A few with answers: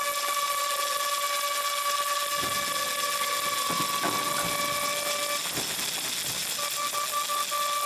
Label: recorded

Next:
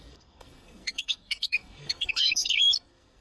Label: remade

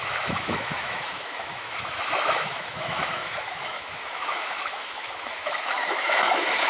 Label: remade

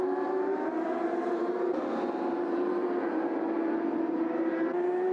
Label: remade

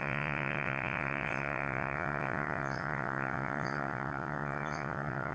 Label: remade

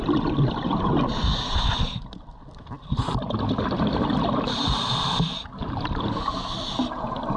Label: recorded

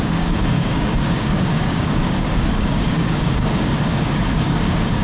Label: remade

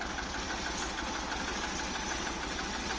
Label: recorded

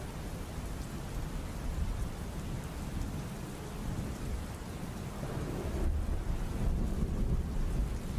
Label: recorded